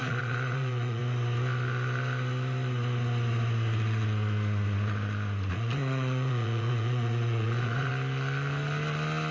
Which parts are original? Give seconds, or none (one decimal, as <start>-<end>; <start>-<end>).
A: 1.0-5.5; 7.9-9.3